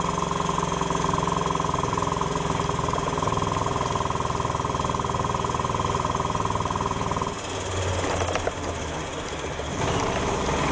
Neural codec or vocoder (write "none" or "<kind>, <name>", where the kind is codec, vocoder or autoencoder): none